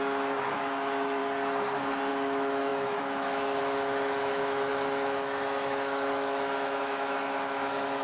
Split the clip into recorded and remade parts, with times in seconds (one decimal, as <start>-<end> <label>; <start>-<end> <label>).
0.0-1.2 remade; 1.2-2.1 recorded; 2.1-8.0 remade